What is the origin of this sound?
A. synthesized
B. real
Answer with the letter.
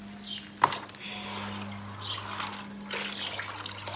B